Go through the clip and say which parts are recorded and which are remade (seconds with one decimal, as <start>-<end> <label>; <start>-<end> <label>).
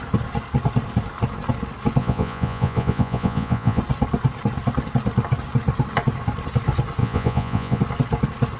0.0-2.0 recorded; 2.0-3.8 remade; 3.8-7.0 recorded; 7.0-7.8 remade; 7.8-8.6 recorded